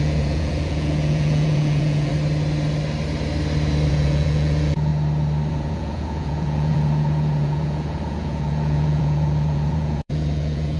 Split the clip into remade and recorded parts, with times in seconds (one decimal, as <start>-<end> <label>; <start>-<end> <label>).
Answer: 0.0-2.1 remade; 2.1-3.9 recorded; 3.9-4.9 remade; 4.9-5.5 recorded; 5.5-10.8 remade